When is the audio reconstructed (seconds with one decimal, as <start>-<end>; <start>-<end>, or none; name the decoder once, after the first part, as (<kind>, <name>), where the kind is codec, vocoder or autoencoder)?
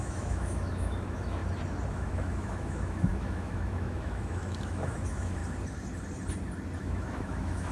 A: 0.0-1.4 (autoencoder, DAC-VAE); 1.9-5.4; 6.8-7.7